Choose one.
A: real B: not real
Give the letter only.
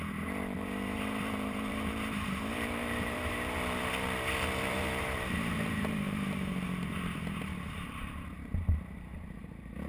B